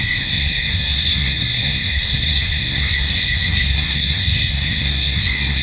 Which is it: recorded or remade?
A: remade